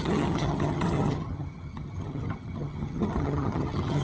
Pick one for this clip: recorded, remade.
remade